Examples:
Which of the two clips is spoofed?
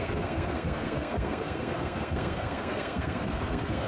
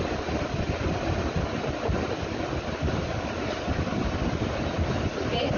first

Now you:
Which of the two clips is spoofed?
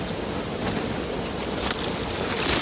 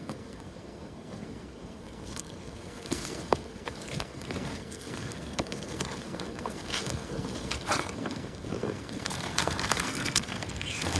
second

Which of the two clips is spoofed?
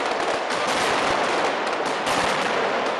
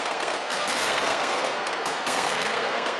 second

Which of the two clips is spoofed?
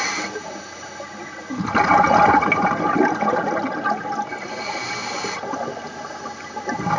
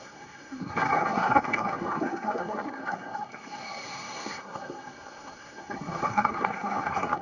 second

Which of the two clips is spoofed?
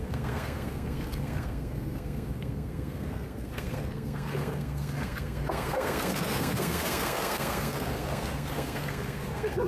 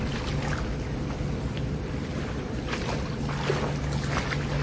first